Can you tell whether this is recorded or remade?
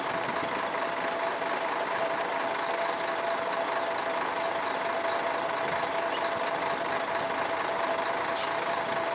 recorded